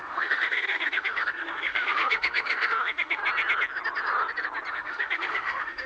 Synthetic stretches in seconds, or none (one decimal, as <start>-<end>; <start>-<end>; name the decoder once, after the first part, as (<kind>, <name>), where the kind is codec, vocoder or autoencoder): 0.0-3.2 (autoencoder, DAC-VAE); 4.7-5.9